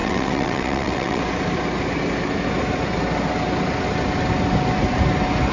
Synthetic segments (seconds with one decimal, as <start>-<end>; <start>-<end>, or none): 0.0-1.2